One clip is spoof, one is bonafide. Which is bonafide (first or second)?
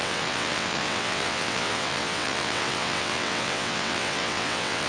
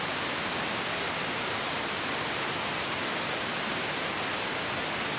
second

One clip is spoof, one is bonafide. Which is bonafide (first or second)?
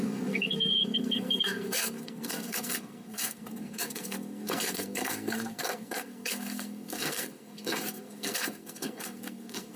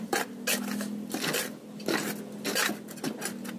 second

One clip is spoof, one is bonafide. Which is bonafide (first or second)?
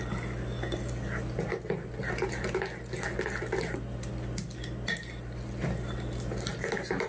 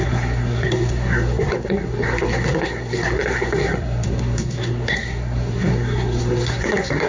first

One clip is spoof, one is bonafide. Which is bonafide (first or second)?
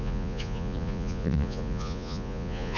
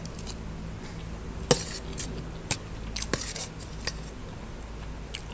second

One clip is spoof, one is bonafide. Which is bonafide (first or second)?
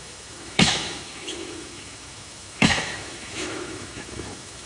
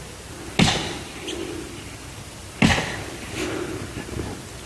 second